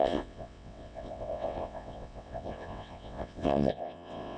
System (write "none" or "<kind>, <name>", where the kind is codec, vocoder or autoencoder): vocoder, WaveNeXt